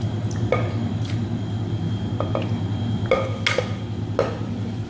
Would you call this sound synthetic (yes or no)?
no